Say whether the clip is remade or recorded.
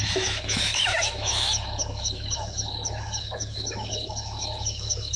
remade